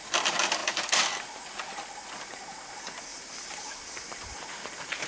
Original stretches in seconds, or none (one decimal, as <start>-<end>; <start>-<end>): 0.0-3.1; 4.3-5.1